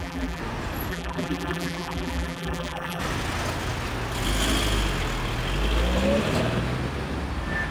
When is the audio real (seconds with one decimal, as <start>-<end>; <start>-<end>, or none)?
0.4-0.9; 3.0-7.7